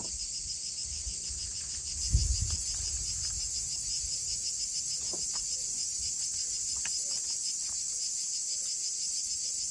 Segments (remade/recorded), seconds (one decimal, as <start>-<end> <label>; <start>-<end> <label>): 0.0-0.8 recorded; 0.8-4.4 remade; 4.4-9.7 recorded